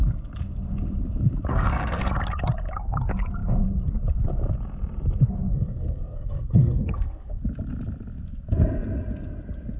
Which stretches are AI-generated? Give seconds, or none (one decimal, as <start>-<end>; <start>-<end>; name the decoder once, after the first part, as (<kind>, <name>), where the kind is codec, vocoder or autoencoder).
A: 1.5-2.1 (codec, SNAC); 5.5-7.4